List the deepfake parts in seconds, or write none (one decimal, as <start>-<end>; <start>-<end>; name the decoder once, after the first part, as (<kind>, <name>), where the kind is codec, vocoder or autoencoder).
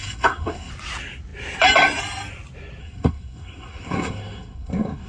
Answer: 0.0-0.7 (codec, SNAC); 2.8-5.1